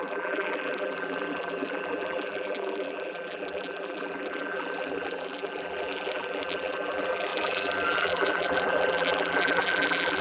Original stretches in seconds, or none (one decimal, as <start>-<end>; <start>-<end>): none